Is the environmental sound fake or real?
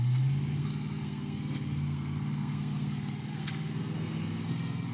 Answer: fake